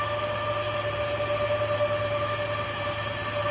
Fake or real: real